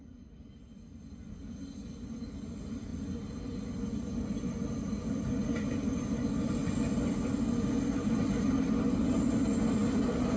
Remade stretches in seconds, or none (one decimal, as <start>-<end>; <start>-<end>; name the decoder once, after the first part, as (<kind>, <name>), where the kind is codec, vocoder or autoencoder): 9.8-10.4 (vocoder, BigVGAN v2)